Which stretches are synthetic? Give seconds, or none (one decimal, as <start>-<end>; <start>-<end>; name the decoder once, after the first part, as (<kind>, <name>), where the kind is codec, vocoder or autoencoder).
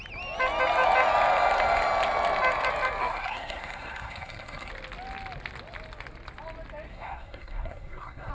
3.0-4.7 (codec, SNAC); 6.9-8.3